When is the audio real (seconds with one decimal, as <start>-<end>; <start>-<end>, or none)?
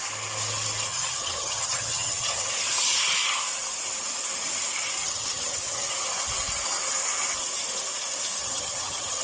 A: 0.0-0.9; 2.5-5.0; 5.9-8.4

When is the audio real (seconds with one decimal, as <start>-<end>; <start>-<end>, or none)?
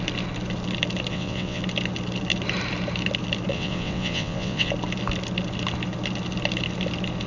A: 0.0-1.1; 1.6-3.5; 4.7-7.3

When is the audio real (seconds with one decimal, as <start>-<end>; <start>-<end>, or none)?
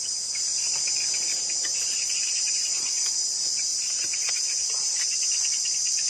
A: 0.0-1.7; 3.0-3.7; 4.3-6.1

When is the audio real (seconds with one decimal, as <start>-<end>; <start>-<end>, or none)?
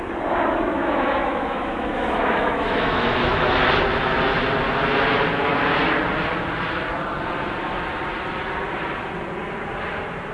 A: 0.0-0.7; 3.5-10.3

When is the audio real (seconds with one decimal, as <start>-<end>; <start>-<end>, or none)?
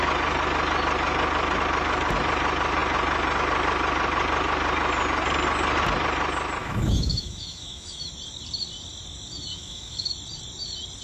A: 0.0-6.6; 8.1-9.5; 10.1-11.0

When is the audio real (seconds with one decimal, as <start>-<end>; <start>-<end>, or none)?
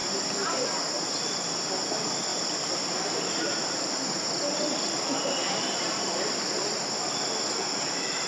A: 0.9-2.3; 7.2-8.3